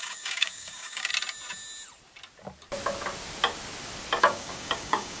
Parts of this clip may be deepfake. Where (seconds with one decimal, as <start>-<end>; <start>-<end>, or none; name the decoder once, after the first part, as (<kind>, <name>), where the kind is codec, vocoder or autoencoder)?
0.0-1.1 (codec, DAC); 4.2-5.2

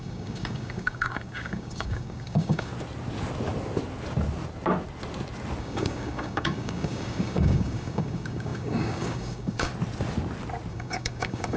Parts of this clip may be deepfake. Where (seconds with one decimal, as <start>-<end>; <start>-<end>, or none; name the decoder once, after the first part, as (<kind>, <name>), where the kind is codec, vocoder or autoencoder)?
0.0-2.7 (codec, DAC); 5.6-9.7; 10.7-11.6

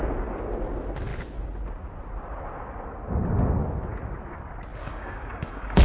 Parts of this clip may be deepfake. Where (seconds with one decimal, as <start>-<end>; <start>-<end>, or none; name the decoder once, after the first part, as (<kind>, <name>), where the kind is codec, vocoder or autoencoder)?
4.8-5.8 (codec, DAC)